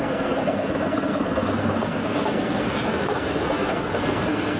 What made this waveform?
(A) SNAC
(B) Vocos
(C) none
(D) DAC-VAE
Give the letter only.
A